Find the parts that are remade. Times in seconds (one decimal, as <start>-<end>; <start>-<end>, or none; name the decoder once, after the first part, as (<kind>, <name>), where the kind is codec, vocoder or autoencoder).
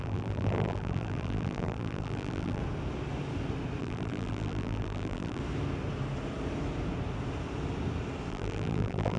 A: 0.0-2.6 (vocoder, BigVGAN v2); 3.8-5.4; 8.3-9.2